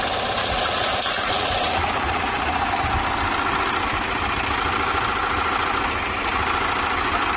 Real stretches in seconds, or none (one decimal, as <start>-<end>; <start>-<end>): 0.0-0.4; 2.7-7.4